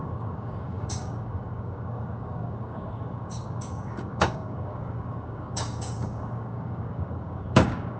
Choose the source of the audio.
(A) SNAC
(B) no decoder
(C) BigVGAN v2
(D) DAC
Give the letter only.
D